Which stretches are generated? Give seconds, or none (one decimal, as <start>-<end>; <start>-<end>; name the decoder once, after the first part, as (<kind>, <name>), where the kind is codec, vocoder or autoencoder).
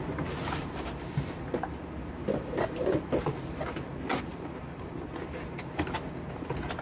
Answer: none